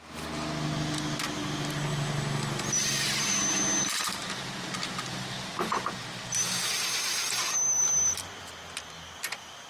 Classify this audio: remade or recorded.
recorded